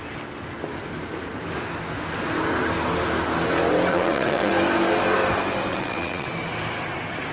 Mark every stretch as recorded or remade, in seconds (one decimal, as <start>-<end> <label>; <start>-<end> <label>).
0.0-3.9 recorded; 3.9-4.5 remade; 4.5-5.7 recorded; 5.7-6.3 remade; 6.3-7.3 recorded